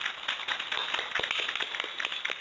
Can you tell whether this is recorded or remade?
recorded